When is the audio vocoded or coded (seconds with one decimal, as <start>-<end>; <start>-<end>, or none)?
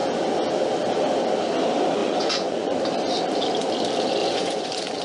2.0-2.8; 4.2-5.0